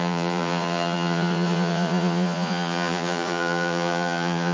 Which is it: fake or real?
fake